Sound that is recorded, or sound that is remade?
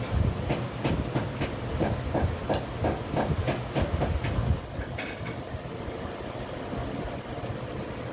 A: recorded